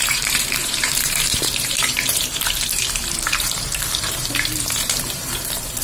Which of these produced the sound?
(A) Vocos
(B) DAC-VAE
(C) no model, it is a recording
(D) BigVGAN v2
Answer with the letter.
D